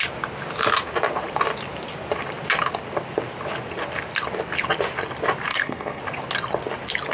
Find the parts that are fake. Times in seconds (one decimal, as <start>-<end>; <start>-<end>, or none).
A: 5.5-6.0